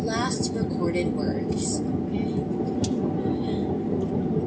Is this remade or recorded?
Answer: recorded